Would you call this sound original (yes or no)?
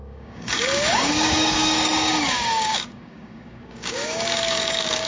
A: no